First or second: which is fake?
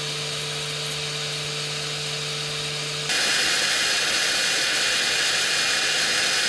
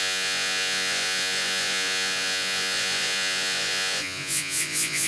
second